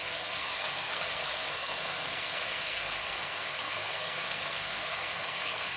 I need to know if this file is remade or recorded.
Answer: remade